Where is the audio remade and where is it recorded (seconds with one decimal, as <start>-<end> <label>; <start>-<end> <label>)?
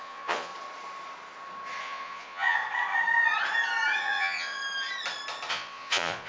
0.0-0.5 remade; 0.5-1.8 recorded; 1.8-2.6 remade; 2.6-4.0 recorded; 4.0-4.6 remade; 4.6-5.5 recorded; 5.5-6.3 remade